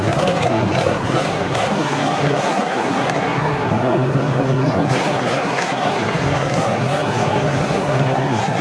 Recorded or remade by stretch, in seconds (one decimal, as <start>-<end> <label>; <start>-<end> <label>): 0.0-8.6 remade